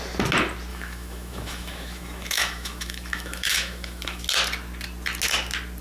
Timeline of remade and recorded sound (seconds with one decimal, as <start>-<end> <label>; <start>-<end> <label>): 0.0-0.7 recorded; 0.7-4.2 remade; 4.2-5.8 recorded